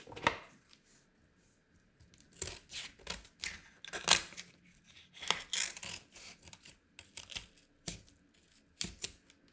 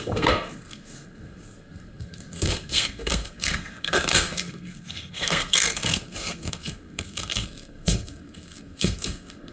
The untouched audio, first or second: first